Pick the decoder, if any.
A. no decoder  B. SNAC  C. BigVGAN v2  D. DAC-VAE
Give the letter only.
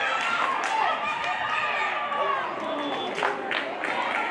A